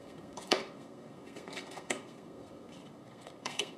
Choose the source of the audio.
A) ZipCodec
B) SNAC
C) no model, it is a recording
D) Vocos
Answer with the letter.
B